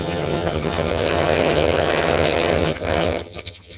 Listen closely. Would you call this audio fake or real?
fake